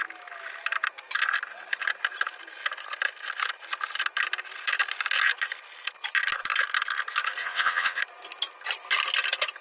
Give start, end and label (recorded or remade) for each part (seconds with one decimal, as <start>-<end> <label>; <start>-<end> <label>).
0.0-7.4 recorded; 7.4-8.0 remade; 8.0-9.6 recorded